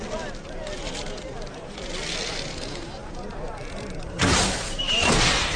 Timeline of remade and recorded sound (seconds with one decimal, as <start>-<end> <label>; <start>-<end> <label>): 0.0-3.0 recorded; 3.0-5.6 remade